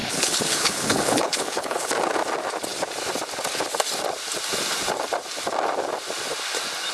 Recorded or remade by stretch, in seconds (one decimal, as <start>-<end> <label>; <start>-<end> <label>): 0.0-1.9 remade; 1.9-6.9 recorded